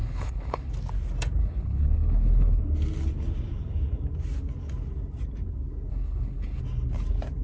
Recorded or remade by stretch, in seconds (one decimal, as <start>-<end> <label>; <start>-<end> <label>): 0.0-0.7 remade; 0.7-1.4 recorded; 1.4-2.6 remade; 2.6-5.9 recorded; 5.9-6.6 remade; 6.6-7.4 recorded